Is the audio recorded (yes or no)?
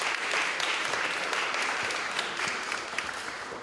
no